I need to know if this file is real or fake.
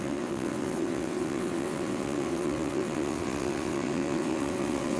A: fake